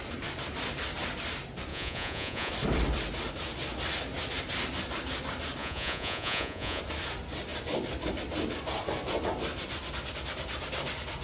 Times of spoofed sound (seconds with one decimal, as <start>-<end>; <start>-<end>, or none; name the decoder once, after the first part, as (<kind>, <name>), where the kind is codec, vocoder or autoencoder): 1.7-2.5 (vocoder, Vocos); 5.6-6.8